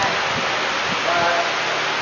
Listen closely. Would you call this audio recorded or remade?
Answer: recorded